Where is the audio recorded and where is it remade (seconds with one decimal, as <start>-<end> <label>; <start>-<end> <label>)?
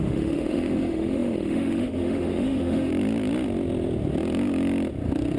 0.0-2.9 remade; 2.9-5.4 recorded